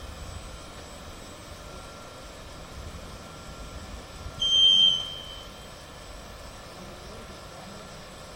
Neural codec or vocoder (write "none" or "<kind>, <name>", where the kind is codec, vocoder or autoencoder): none